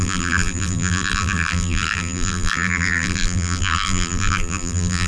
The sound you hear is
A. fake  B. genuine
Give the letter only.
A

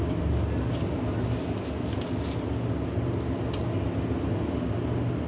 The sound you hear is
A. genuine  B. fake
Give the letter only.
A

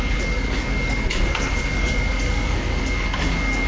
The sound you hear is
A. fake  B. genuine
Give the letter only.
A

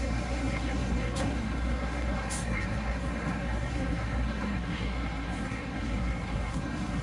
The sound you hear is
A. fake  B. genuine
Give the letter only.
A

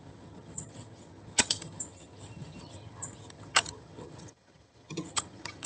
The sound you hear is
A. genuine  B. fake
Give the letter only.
B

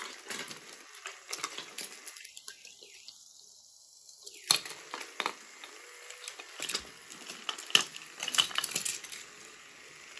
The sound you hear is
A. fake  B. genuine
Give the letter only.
B